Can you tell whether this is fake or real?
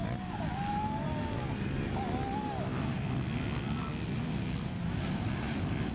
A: real